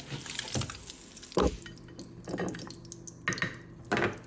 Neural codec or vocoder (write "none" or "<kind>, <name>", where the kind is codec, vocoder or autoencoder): none